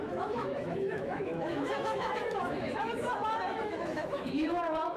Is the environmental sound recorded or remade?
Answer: remade